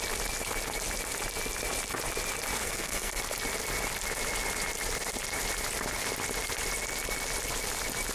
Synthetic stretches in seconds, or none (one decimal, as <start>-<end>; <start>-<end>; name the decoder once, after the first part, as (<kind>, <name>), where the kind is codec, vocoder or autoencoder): 2.6-3.2 (codec, SNAC)